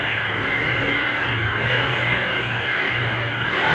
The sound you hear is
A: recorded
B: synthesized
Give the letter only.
B